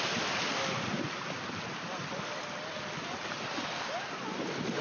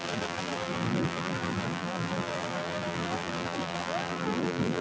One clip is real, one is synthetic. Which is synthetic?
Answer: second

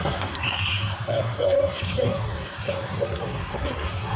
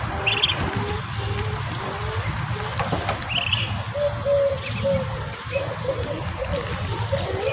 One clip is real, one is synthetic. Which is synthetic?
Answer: first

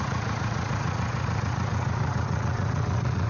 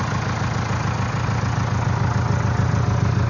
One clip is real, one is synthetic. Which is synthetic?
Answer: first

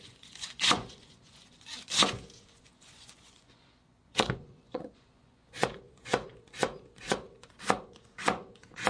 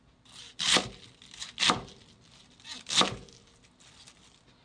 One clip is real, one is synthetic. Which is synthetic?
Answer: first